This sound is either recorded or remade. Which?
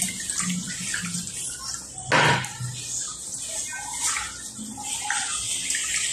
recorded